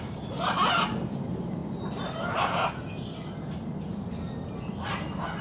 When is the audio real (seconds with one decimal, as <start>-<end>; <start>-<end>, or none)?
0.0-5.4